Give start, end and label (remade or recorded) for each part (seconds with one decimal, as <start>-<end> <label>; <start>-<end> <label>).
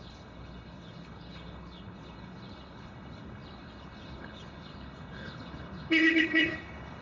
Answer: 0.0-7.0 remade